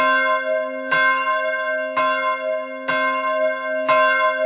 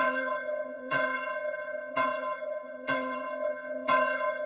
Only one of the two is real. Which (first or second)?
first